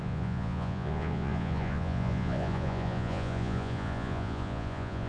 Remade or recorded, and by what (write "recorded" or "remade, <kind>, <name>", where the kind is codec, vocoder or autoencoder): remade, vocoder, Vocos